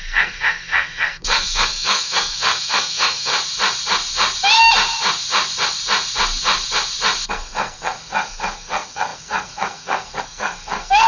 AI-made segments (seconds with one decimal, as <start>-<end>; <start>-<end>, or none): 0.0-3.3; 7.3-11.1